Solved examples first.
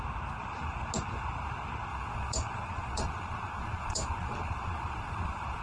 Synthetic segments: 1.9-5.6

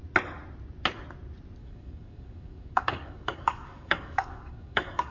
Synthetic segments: 1.6-5.1